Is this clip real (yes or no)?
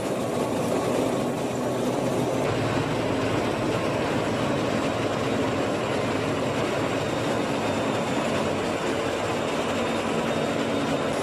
yes